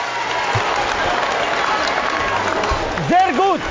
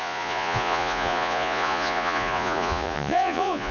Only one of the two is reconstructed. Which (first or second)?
second